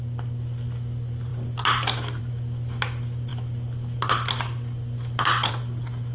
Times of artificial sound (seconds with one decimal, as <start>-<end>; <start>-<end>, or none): none